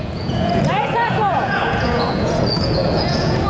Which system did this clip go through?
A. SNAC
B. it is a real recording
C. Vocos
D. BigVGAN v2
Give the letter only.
C